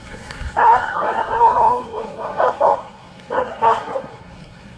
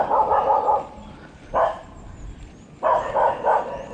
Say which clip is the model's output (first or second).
first